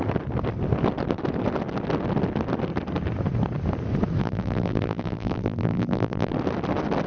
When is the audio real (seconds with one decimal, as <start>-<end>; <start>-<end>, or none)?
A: 0.0-4.2; 6.3-7.1